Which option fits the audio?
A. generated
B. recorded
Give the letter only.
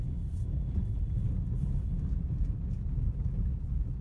B